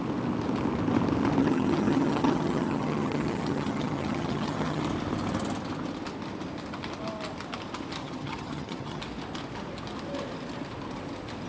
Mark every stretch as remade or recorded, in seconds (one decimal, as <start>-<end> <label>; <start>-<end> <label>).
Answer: 0.0-1.4 recorded; 1.4-4.8 remade; 4.8-8.0 recorded; 8.0-9.0 remade; 9.0-11.5 recorded